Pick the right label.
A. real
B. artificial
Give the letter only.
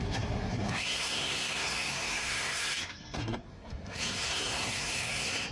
B